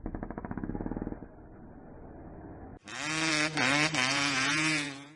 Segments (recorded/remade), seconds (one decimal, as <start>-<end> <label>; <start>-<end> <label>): 0.0-4.1 recorded; 4.1-5.2 remade